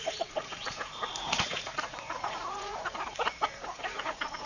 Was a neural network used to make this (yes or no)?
yes